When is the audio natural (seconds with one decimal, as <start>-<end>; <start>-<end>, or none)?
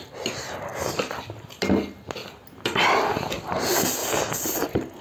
0.0-5.0